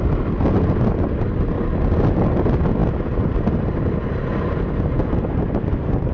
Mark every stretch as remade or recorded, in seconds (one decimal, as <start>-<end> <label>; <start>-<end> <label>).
0.0-6.1 recorded